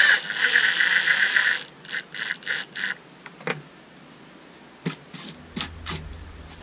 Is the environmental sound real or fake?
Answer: real